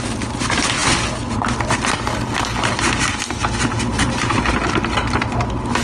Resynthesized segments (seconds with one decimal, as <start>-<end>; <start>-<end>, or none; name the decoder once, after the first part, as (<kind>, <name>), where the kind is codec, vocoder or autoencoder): none